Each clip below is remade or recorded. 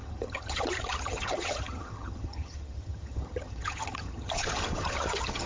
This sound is remade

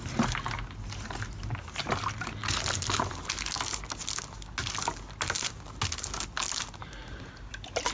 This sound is recorded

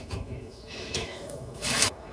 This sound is remade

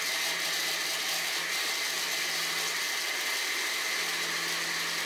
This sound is recorded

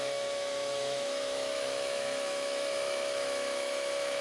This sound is remade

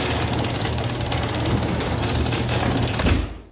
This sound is recorded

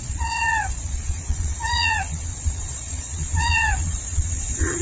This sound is remade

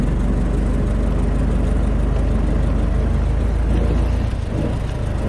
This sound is recorded